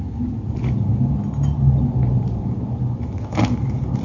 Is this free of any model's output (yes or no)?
yes